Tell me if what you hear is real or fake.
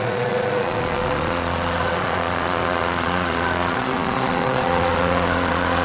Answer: fake